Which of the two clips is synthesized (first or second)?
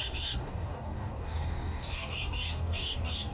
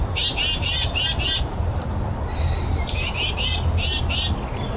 first